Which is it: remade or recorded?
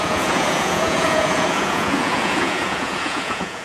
remade